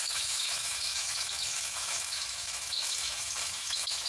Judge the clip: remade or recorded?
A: remade